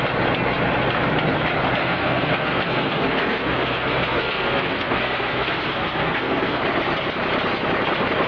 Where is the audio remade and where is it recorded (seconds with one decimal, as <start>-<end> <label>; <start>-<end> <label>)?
0.0-1.8 recorded; 1.8-6.6 remade; 6.6-8.3 recorded